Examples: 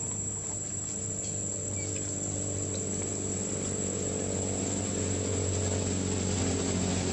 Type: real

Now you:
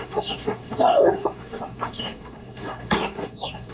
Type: fake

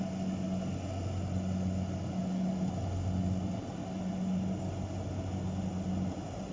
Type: real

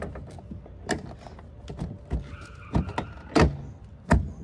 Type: real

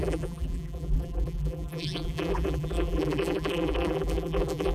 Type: fake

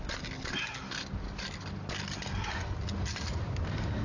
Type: real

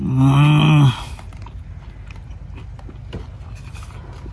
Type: real